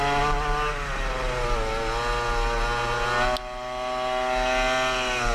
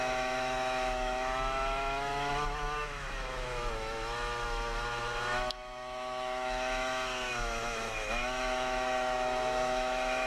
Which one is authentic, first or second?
first